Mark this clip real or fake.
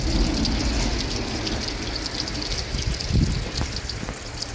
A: real